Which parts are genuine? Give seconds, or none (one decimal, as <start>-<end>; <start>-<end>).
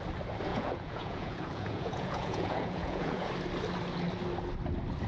0.0-0.5; 3.3-5.1